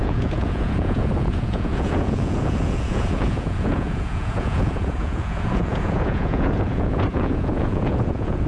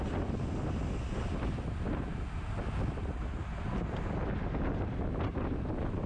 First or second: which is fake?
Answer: first